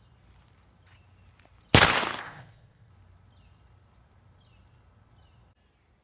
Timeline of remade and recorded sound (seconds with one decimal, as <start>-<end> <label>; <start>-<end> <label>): 0.0-2.2 recorded; 2.2-2.9 remade; 2.9-6.0 recorded